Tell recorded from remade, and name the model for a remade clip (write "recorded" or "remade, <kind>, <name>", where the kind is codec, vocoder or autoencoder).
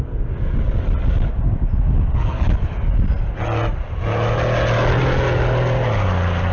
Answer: recorded